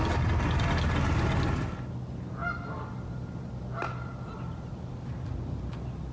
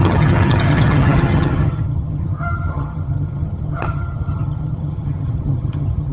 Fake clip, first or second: second